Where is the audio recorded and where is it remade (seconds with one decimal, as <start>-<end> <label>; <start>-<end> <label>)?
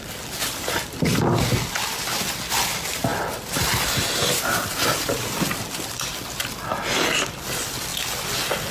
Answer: 0.0-7.9 remade; 7.9-8.7 recorded